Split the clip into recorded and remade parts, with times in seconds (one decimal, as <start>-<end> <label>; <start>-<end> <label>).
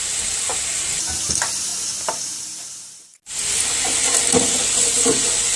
0.0-0.5 recorded; 0.5-1.0 remade; 1.0-1.7 recorded; 1.7-3.3 remade; 3.3-5.6 recorded